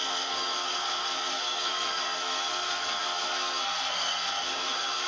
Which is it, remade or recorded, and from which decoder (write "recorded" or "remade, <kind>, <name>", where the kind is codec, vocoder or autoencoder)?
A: remade, codec, SNAC